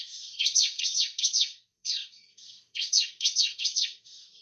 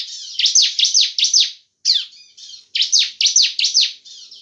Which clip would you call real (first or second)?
second